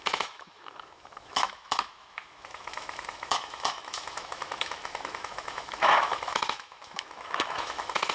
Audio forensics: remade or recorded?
remade